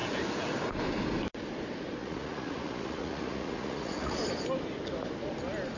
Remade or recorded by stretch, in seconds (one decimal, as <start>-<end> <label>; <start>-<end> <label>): 0.0-2.0 recorded; 2.0-4.2 remade; 4.2-5.8 recorded